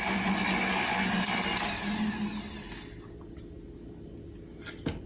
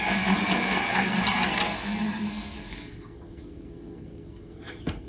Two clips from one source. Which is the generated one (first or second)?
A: second